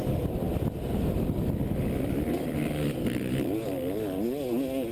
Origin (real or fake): real